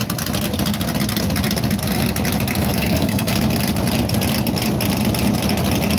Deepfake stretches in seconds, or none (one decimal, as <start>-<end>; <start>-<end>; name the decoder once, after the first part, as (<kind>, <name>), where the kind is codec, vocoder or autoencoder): 2.6-3.4 (codec, SNAC)